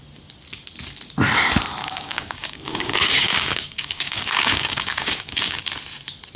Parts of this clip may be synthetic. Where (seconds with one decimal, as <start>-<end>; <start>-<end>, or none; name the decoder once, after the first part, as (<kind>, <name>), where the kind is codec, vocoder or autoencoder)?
1.8-5.6 (codec, DAC)